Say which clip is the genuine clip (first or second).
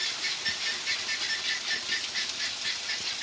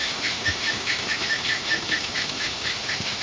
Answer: first